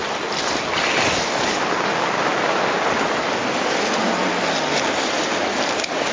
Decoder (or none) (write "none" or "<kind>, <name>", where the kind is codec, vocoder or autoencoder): none